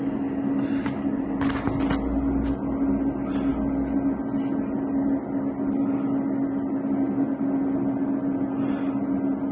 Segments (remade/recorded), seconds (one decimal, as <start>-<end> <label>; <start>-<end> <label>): 0.0-9.5 recorded

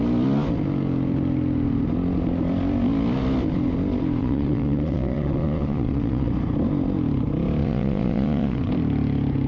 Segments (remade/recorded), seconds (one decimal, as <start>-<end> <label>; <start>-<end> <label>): 0.0-4.2 recorded; 4.2-6.3 remade; 6.3-7.6 recorded; 7.6-8.7 remade; 8.7-9.5 recorded

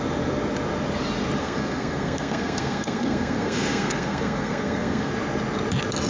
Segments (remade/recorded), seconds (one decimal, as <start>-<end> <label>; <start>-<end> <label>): 0.0-1.4 recorded; 1.4-5.1 remade; 5.1-6.1 recorded

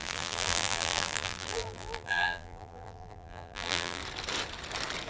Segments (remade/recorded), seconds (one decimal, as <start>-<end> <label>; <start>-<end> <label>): 0.0-4.0 remade; 4.0-5.1 recorded

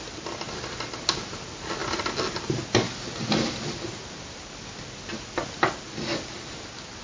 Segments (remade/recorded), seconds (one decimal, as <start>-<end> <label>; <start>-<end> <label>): 0.0-7.0 recorded

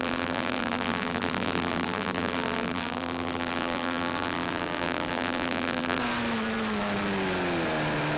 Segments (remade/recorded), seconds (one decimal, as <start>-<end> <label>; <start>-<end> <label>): 0.0-6.0 remade; 6.0-8.2 recorded